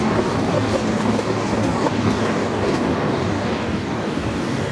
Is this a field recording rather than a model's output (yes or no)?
no